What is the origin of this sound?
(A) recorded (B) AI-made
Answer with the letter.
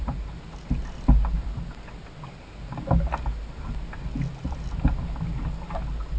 A